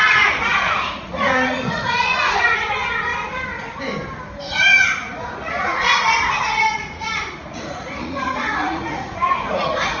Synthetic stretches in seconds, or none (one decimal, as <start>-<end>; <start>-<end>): 0.0-3.1; 4.4-10.0